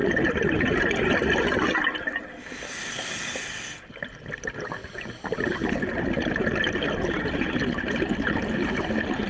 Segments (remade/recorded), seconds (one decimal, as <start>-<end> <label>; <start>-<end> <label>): 0.0-9.3 recorded